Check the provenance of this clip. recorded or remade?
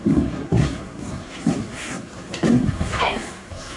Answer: remade